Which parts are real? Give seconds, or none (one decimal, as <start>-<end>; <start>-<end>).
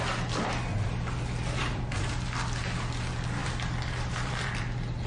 0.0-1.4; 2.0-3.4; 4.5-5.1